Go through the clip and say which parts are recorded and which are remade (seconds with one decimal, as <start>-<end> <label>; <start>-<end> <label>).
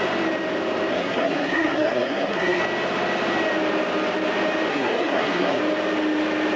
0.0-0.9 recorded; 0.9-2.6 remade; 2.6-4.7 recorded; 4.7-5.6 remade; 5.6-6.6 recorded